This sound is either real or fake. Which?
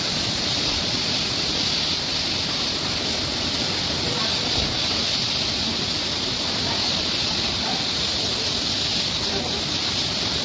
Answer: real